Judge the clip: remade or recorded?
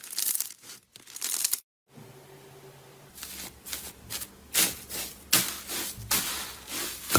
recorded